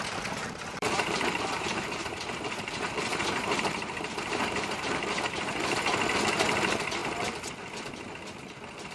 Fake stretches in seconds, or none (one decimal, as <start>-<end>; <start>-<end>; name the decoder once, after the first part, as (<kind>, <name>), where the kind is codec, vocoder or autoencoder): 0.7-5.8 (vocoder, BigVGAN v2)